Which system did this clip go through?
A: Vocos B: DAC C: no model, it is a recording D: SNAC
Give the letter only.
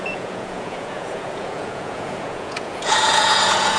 A